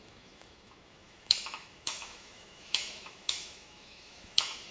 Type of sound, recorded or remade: remade